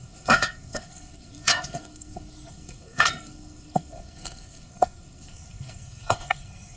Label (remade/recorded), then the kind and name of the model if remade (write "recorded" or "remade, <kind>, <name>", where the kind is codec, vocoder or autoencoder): remade, codec, SNAC